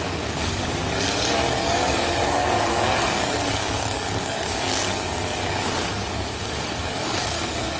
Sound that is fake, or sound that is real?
fake